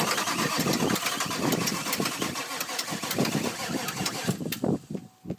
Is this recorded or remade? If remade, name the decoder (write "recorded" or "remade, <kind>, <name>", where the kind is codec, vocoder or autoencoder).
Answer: recorded